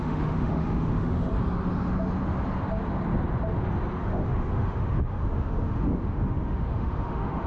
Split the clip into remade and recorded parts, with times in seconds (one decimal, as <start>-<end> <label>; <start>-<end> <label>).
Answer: 0.0-1.3 remade; 1.3-4.0 recorded; 4.0-7.5 remade